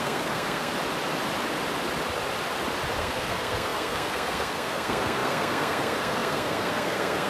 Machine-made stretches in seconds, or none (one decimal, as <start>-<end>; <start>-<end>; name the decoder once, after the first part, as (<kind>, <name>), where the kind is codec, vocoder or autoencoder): 0.0-0.7 (codec, SNAC); 3.0-7.3